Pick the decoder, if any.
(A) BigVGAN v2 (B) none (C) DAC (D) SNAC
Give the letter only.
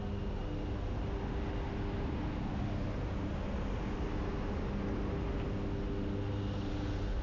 B